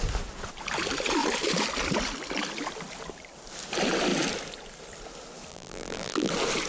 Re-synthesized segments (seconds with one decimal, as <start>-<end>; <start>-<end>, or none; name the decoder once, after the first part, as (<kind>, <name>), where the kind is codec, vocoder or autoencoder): 5.5-6.3 (vocoder, BigVGAN v2)